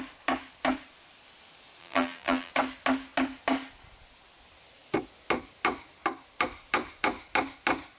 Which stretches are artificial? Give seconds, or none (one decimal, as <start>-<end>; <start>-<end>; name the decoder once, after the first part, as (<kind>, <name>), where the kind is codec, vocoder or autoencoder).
1.8-2.5 (vocoder, BigVGAN v2)